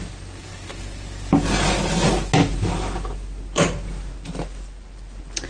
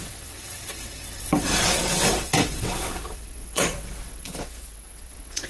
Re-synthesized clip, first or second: second